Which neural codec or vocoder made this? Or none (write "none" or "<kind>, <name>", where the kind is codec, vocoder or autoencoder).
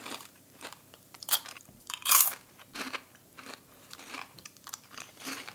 vocoder, BigVGAN v2